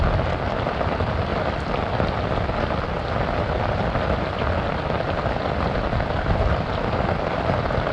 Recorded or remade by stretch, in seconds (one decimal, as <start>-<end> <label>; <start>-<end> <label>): 0.0-7.9 recorded